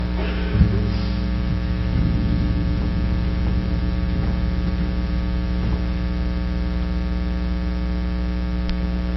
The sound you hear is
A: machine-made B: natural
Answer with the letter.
B